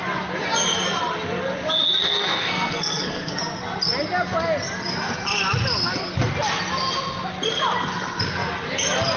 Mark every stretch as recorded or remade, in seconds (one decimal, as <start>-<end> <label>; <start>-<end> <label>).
0.0-2.0 recorded; 2.0-3.4 remade; 3.4-9.2 recorded